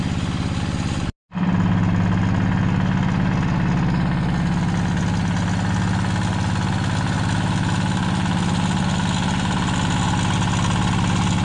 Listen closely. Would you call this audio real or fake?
real